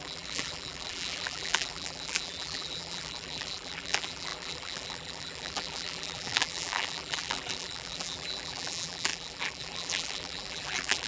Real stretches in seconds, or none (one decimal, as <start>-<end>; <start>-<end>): none